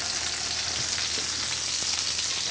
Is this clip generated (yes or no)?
no